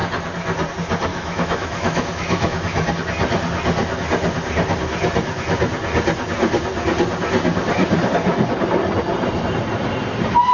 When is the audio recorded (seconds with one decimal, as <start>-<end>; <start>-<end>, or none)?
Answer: 0.0-1.1; 2.9-10.5